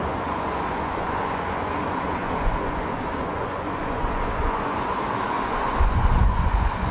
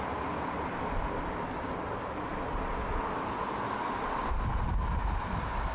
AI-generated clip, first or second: first